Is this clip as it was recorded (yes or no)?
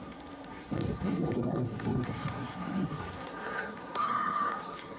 no